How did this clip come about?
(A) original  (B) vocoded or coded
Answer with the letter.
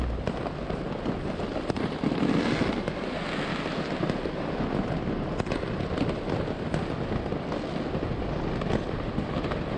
A